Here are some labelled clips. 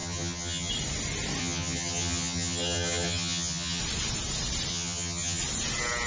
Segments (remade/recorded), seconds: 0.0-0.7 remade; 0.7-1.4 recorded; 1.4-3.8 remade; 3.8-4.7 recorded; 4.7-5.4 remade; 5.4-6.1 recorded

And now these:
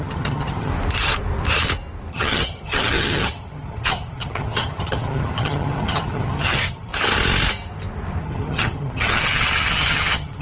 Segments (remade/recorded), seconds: 0.0-0.7 remade; 0.7-2.1 recorded; 2.1-6.9 remade; 6.9-8.2 recorded; 8.2-10.4 remade